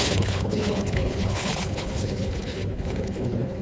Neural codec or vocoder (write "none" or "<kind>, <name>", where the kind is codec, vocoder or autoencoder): codec, HILCodec